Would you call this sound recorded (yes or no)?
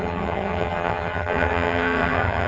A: no